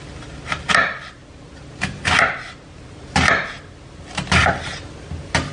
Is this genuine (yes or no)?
yes